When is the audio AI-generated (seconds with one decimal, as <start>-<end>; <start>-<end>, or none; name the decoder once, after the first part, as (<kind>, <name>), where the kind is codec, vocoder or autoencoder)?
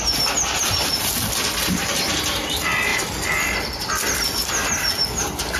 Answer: none